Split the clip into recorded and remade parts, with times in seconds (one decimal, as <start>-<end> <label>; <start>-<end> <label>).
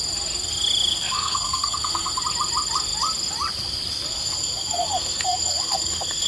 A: 0.0-0.9 recorded; 0.9-2.2 remade; 2.2-4.1 recorded; 4.1-6.3 remade